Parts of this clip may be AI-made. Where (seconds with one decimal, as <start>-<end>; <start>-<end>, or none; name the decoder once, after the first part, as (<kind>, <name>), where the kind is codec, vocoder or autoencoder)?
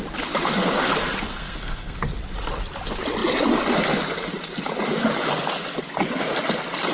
1.3-2.0 (codec, SNAC)